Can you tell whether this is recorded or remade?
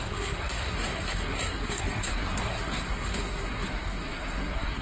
remade